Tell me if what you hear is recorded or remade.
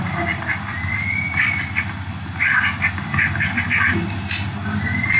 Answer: recorded